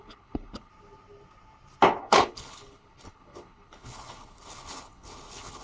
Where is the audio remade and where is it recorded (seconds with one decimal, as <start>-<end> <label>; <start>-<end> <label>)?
0.0-0.7 remade; 0.7-2.0 recorded; 2.0-5.6 remade